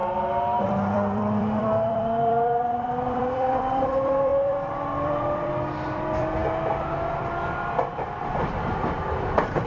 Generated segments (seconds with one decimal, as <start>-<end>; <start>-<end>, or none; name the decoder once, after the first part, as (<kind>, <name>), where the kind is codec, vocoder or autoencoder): 0.7-6.4 (vocoder, BigVGAN v2); 7.2-9.7